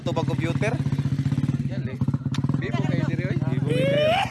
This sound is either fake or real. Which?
real